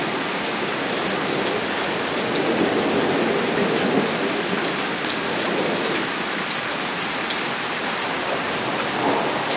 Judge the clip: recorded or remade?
recorded